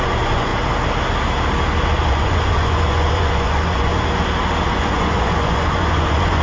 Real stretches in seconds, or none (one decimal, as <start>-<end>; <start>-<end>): 0.5-2.1; 3.9-4.7

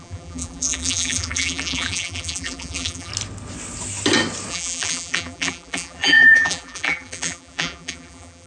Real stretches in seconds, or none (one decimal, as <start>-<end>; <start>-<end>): 3.1-4.5

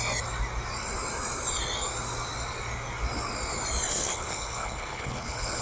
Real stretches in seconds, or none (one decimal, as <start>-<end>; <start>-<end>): 0.0-3.9

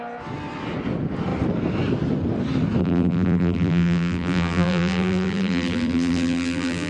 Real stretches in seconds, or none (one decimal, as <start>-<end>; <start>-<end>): 0.0-2.8

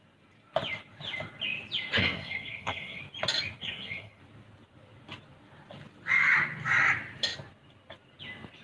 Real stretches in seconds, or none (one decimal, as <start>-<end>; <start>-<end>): 0.0-2.0; 3.0-3.6; 4.2-8.6

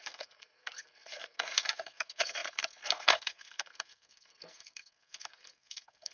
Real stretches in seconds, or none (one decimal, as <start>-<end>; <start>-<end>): none